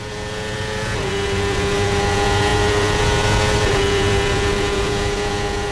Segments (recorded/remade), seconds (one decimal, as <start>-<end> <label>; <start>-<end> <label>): 0.0-5.7 remade